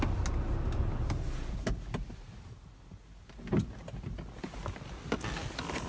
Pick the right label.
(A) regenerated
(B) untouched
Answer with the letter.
B